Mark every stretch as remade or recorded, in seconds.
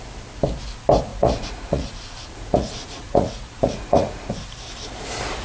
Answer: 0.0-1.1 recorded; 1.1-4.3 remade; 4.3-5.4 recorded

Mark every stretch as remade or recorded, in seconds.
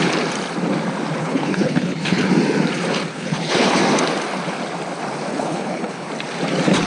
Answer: 0.0-1.2 recorded; 1.2-2.3 remade; 2.3-3.1 recorded; 3.1-3.8 remade; 3.8-5.3 recorded; 5.3-6.1 remade; 6.1-6.9 recorded